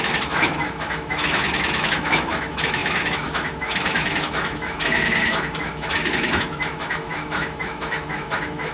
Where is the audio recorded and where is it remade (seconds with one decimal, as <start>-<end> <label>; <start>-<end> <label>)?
0.0-8.7 remade

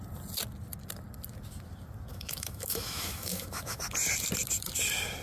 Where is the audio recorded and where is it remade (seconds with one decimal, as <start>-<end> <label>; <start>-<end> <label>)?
0.0-2.1 recorded; 2.1-3.8 remade; 3.8-5.2 recorded

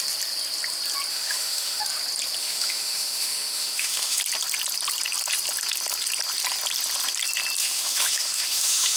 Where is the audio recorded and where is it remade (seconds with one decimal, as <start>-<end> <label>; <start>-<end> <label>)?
0.0-1.1 recorded; 1.1-1.8 remade; 1.8-2.4 recorded; 2.4-4.2 remade; 4.2-7.6 recorded; 7.6-9.0 remade

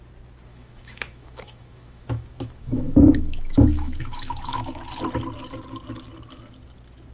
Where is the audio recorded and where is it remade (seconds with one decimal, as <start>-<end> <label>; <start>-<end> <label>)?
0.0-0.5 recorded; 0.5-4.8 remade; 4.8-7.1 recorded

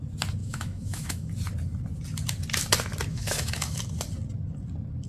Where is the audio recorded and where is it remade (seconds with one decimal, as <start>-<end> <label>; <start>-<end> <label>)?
0.0-0.4 recorded; 0.4-1.3 remade; 1.3-3.1 recorded; 3.1-3.8 remade; 3.8-5.1 recorded

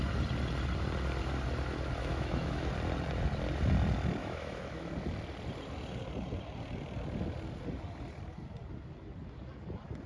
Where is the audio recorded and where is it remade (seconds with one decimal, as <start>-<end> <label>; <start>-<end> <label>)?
0.0-2.0 recorded; 2.0-2.7 remade; 2.7-4.2 recorded; 4.2-4.9 remade; 4.9-10.1 recorded

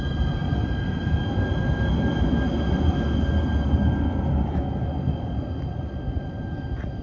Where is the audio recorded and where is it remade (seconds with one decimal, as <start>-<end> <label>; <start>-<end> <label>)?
0.0-7.0 recorded

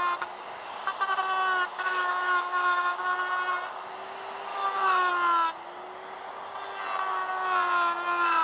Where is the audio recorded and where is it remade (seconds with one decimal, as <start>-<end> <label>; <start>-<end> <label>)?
0.0-1.7 recorded; 1.7-3.0 remade; 3.0-4.5 recorded; 4.5-5.1 remade; 5.1-8.4 recorded